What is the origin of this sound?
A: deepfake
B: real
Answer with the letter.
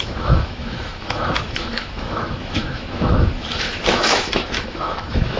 A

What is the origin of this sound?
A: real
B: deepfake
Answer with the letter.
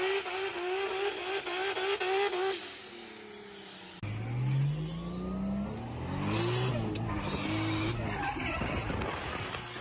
A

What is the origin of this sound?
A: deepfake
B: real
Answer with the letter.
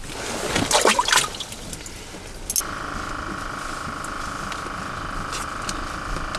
B